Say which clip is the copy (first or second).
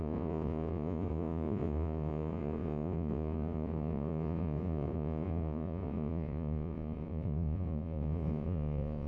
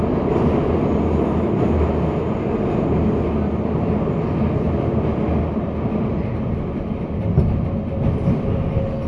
first